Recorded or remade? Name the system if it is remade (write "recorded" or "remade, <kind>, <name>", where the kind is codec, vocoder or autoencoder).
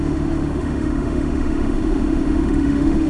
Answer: remade, autoencoder, DAC-VAE